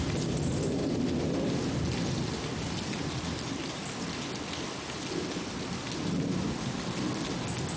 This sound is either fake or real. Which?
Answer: real